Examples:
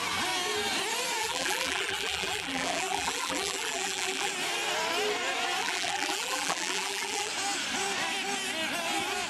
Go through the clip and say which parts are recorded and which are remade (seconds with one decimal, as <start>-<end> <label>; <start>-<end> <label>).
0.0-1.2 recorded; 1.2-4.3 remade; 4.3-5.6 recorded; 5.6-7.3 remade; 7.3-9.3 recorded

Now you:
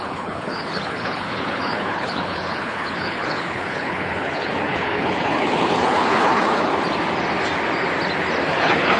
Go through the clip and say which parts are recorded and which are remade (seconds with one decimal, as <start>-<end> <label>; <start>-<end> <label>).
0.0-6.7 remade; 6.7-8.5 recorded; 8.5-9.0 remade

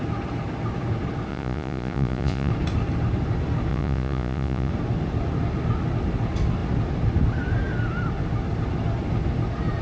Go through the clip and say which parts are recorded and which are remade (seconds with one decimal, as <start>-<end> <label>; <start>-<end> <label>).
0.0-1.3 recorded; 1.3-2.5 remade; 2.5-3.7 recorded; 3.7-4.7 remade; 4.7-9.8 recorded